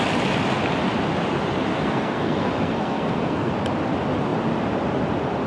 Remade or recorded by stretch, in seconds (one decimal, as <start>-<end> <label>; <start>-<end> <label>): 0.0-1.7 recorded; 1.7-3.5 remade; 3.5-5.5 recorded